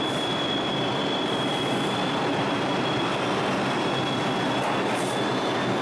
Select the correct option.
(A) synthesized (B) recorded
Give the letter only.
B